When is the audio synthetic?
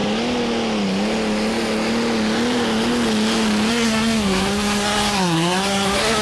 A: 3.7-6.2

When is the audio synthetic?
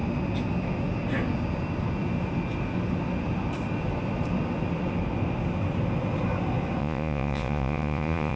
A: 6.8-8.4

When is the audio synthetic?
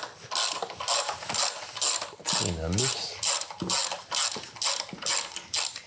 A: none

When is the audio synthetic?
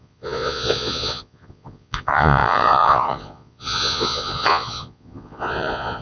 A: 0.0-6.0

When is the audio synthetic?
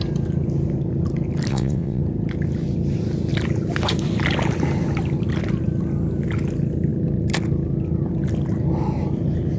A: 1.5-2.0